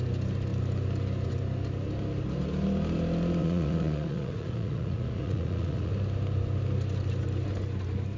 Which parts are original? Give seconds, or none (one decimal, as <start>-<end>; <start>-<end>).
0.0-3.4; 5.9-8.2